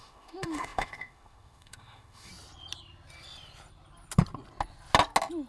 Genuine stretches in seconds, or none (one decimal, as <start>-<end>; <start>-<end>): 2.3-5.5